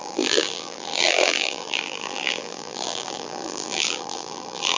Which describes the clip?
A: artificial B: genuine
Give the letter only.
A